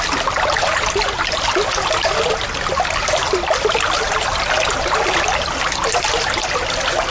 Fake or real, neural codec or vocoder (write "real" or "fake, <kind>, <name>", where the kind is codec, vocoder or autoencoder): real